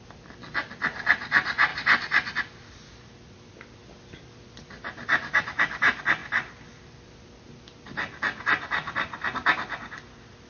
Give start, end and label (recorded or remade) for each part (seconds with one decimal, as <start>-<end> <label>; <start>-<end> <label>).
0.0-10.5 recorded